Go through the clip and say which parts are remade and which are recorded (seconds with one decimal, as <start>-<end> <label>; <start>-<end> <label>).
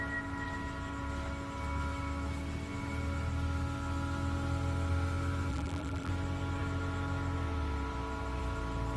0.0-5.5 recorded; 5.5-6.1 remade; 6.1-9.0 recorded